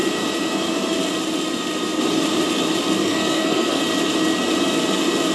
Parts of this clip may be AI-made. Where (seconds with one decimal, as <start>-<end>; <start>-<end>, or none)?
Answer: 3.0-3.8

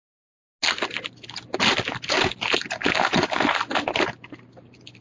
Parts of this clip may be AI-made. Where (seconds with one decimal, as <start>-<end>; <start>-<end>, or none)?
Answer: none

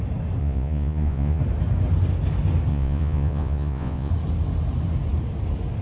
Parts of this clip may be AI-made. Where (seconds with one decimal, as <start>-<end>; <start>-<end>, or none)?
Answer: 0.4-1.4; 2.7-4.1

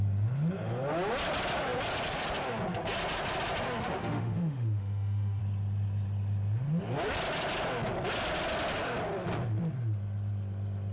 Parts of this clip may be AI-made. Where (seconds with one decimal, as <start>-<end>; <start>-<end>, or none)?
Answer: 3.8-5.4

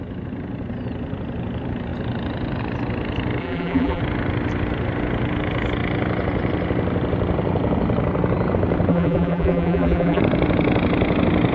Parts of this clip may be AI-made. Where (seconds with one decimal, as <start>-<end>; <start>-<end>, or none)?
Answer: 3.4-4.0; 8.9-10.2

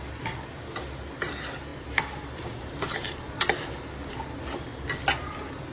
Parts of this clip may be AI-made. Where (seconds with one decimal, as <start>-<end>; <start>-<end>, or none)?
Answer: none

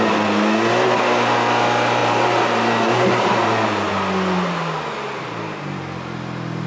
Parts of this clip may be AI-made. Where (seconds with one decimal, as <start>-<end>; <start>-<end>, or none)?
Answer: 2.0-3.9

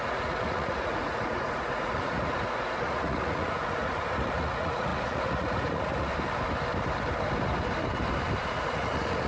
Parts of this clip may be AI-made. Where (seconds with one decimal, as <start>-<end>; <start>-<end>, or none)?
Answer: 0.0-6.1; 8.4-9.3